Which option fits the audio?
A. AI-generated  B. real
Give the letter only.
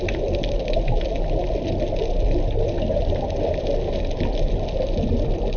B